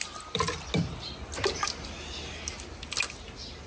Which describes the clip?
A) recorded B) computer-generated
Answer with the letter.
A